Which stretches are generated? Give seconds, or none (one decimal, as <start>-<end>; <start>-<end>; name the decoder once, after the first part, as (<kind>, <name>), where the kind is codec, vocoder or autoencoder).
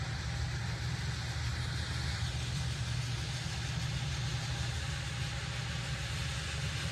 none